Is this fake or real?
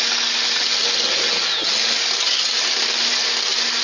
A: real